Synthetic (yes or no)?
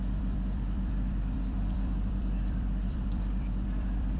yes